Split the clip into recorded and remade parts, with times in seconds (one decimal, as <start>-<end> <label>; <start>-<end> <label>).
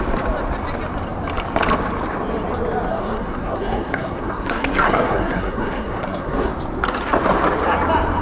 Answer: 0.0-2.9 recorded; 2.9-6.5 remade; 6.5-8.2 recorded